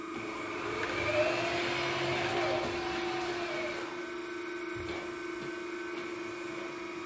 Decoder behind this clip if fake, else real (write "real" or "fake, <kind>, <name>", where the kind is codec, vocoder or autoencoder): real